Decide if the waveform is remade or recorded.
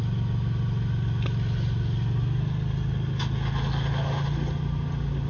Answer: recorded